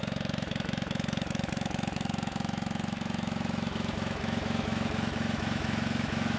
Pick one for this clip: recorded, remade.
remade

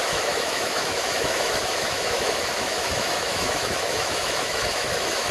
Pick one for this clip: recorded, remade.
remade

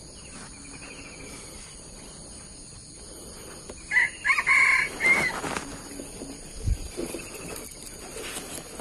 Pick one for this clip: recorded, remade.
recorded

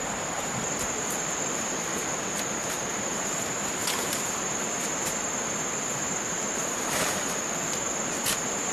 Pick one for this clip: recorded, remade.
remade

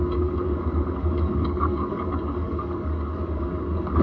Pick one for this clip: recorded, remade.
remade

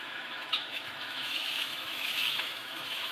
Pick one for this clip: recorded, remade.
remade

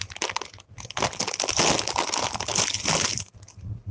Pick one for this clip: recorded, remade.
recorded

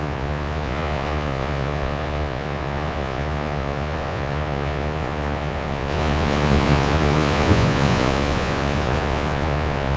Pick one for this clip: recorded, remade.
remade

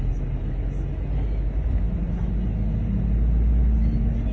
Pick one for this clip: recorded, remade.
recorded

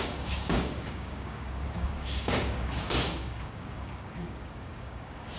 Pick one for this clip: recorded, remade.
remade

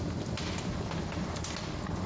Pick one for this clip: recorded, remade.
recorded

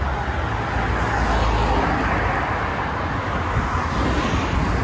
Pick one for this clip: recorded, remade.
recorded